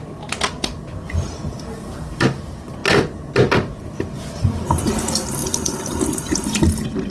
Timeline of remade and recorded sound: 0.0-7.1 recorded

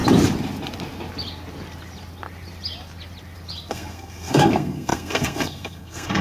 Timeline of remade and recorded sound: 0.0-3.7 recorded; 3.7-6.2 remade